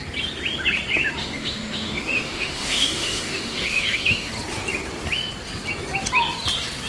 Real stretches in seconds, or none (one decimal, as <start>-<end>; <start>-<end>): 0.0-1.2; 4.3-6.9